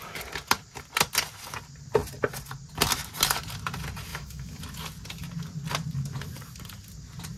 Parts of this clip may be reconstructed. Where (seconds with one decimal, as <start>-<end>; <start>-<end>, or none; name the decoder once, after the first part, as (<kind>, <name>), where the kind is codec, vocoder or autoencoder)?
4.1-4.6 (autoencoder, DAC-VAE)